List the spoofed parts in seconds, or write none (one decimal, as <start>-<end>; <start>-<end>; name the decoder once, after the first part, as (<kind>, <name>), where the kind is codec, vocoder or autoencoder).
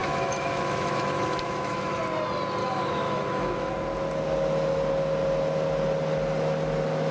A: 0.0-2.0 (autoencoder, DAC-VAE); 2.6-3.7